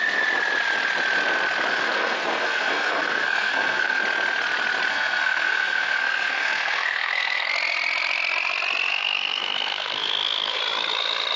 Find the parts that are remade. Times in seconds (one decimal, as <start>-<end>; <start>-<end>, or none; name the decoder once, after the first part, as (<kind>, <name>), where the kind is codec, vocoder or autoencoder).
1.8-4.0 (codec, SNAC); 4.9-7.5; 8.9-10.6